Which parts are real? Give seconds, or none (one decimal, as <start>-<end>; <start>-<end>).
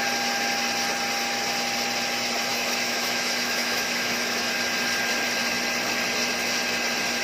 0.0-2.5; 4.5-7.2